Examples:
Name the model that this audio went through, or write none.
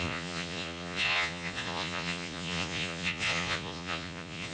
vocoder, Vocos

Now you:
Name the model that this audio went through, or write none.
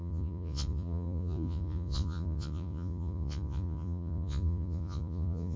vocoder, Vocos